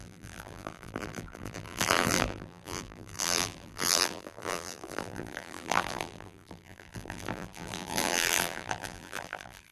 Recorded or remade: remade